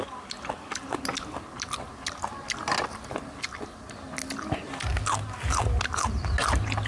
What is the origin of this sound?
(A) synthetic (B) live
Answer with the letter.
B